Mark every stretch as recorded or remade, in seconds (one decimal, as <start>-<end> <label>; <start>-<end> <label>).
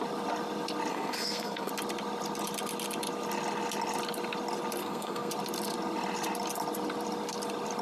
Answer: 0.0-0.9 recorded; 0.9-1.7 remade; 1.7-4.8 recorded; 4.8-5.3 remade; 5.3-7.8 recorded